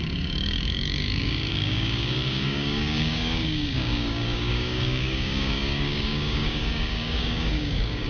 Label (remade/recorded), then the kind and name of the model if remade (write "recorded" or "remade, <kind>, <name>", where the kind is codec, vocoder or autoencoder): remade, codec, DAC